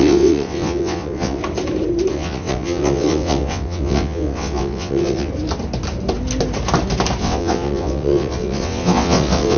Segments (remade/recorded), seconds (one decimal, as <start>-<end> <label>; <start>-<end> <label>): 0.0-1.4 remade; 1.4-2.1 recorded; 2.1-5.3 remade; 5.3-7.2 recorded; 7.2-9.6 remade